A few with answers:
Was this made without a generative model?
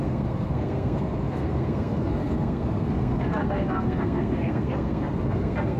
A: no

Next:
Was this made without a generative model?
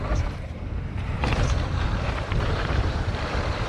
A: no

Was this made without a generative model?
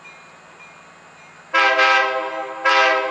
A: yes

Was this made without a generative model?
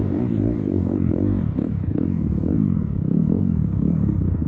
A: no